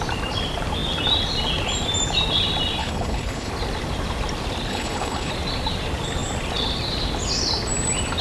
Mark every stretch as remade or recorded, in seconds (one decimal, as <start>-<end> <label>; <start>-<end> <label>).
0.0-2.8 recorded; 2.8-3.5 remade; 3.5-4.7 recorded; 4.7-5.3 remade; 5.3-8.2 recorded